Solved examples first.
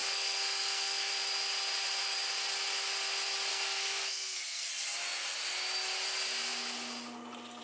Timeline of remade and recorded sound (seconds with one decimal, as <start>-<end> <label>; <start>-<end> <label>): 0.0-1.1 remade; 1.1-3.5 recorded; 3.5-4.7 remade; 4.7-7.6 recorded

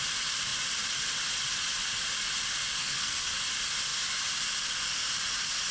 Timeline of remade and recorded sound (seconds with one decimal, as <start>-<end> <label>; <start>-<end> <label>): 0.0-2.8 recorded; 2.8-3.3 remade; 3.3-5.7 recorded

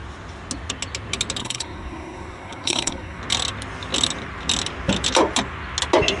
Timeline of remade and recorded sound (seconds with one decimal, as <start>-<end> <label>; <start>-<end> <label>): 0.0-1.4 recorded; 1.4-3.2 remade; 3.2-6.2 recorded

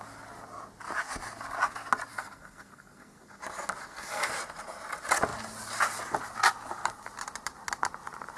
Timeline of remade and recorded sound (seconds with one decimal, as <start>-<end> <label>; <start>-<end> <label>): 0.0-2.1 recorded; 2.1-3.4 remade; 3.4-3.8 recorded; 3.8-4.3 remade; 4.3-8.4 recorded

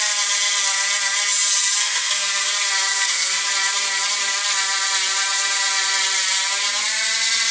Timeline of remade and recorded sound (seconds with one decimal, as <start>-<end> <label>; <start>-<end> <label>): 0.0-1.8 recorded; 1.8-2.5 remade; 2.5-2.9 recorded; 2.9-3.5 remade; 3.5-7.5 recorded